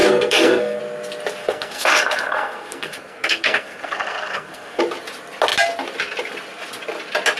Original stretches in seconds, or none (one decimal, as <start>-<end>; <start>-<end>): 0.8-1.4; 4.8-7.4

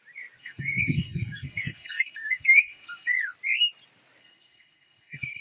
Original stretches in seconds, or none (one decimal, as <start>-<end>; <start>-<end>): 0.0-0.4; 3.1-4.2

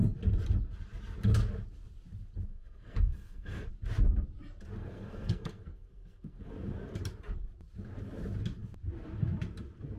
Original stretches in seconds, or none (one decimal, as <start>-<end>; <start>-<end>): 0.0-2.5; 3.7-4.8; 6.5-10.0

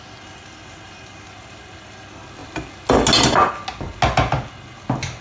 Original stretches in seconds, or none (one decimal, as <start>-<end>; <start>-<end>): 0.0-5.2

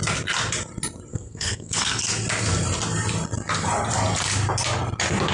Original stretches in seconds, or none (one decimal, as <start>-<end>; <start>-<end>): 0.0-1.1; 2.0-5.3